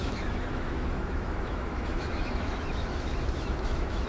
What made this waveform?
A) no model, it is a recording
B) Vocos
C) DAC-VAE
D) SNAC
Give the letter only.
C